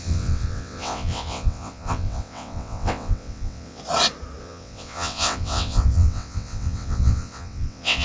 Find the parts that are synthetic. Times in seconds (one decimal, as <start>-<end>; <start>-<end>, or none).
0.0-3.8; 4.4-8.0